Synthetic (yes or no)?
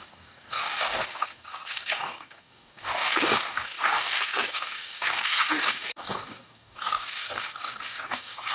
yes